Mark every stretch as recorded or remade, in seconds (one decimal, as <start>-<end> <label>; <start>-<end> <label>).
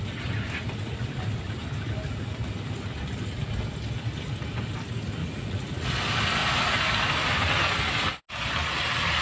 0.0-5.2 recorded; 5.2-5.9 remade; 5.9-9.2 recorded